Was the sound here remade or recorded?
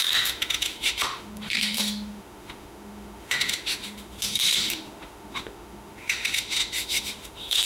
remade